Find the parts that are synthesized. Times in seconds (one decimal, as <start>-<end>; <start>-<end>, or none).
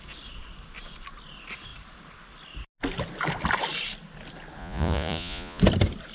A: 4.6-5.6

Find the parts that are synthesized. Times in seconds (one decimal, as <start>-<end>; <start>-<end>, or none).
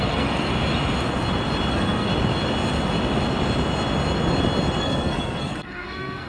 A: 0.0-0.5; 1.7-2.1; 4.8-6.3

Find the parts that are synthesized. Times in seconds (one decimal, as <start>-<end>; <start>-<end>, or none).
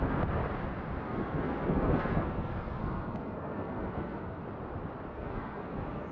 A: 0.0-0.4; 1.0-4.4; 5.1-6.1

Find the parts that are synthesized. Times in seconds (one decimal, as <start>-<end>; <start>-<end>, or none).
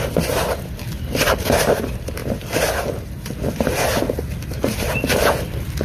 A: 0.0-2.2; 4.6-5.8